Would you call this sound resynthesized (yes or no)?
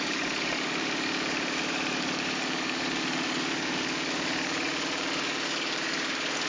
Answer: yes